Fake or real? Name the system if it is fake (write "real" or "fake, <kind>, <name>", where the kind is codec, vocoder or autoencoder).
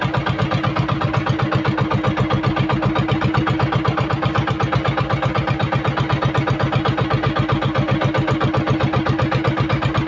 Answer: real